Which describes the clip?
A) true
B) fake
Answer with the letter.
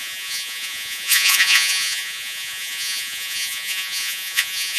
B